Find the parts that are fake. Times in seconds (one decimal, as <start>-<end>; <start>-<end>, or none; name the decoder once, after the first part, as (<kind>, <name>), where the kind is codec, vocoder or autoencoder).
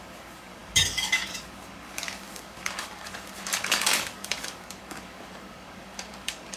0.0-6.6 (codec, DAC)